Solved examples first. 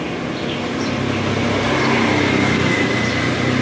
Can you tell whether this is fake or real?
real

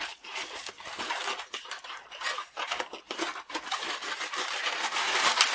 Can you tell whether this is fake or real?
fake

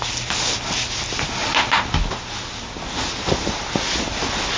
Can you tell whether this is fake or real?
real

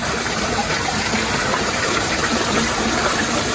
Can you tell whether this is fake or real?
fake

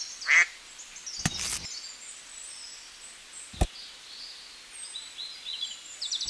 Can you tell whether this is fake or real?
real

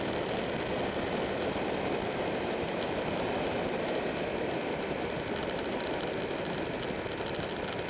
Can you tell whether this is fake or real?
real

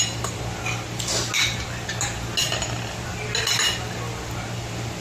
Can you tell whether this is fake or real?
real